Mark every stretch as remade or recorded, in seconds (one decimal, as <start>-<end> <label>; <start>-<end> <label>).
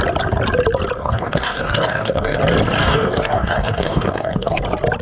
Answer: 0.0-1.0 recorded; 1.0-2.4 remade; 2.4-2.8 recorded; 2.8-4.6 remade; 4.6-5.0 recorded